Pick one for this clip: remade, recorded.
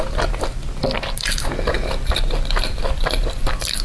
remade